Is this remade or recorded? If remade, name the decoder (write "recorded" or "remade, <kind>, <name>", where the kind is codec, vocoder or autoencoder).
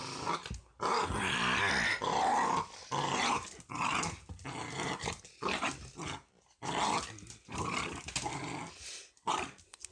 recorded